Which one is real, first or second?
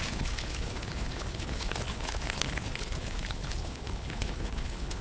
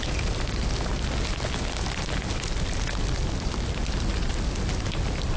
second